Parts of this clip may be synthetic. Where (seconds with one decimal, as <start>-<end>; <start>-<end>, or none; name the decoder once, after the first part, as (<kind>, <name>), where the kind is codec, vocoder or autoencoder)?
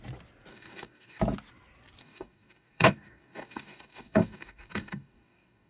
0.5-1.2 (codec, DAC); 2.0-5.7